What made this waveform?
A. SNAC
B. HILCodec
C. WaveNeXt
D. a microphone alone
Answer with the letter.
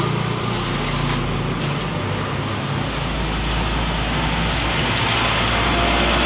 D